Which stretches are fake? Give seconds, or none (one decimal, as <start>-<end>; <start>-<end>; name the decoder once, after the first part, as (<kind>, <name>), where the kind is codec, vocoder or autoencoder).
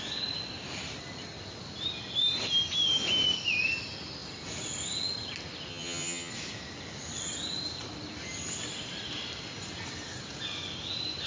5.7-6.3 (vocoder, HiFi-GAN)